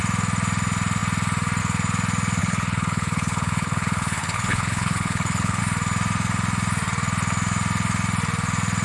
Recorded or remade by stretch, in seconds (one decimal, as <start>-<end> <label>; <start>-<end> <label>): 0.0-2.4 recorded; 2.4-5.6 remade; 5.6-8.8 recorded

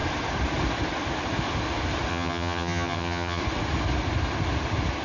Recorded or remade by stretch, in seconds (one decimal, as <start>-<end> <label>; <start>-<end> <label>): 0.0-2.1 recorded; 2.1-3.4 remade; 3.4-5.0 recorded

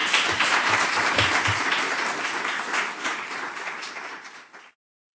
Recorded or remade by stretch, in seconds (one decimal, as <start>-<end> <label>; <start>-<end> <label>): 0.0-5.2 remade